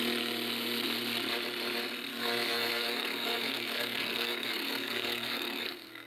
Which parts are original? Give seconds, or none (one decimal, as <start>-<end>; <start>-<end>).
0.0-2.1